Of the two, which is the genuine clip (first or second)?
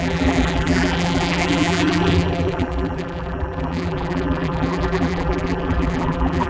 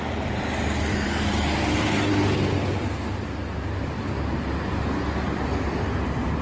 second